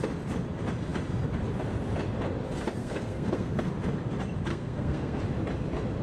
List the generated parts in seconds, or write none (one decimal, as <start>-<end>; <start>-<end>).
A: 2.8-3.7; 4.5-5.2